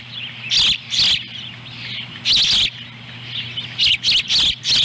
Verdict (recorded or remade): recorded